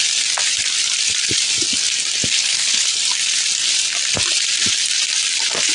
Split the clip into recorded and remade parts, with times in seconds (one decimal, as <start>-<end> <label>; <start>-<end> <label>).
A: 0.0-2.3 recorded; 2.3-2.9 remade; 2.9-5.7 recorded